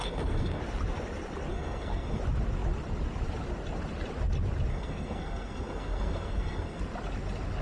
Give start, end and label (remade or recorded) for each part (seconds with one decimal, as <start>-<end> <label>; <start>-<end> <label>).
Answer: 0.0-0.6 remade; 0.6-1.5 recorded; 1.5-2.2 remade; 2.2-4.7 recorded; 4.7-6.8 remade; 6.8-7.6 recorded